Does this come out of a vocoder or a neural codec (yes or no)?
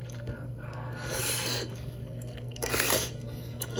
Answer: yes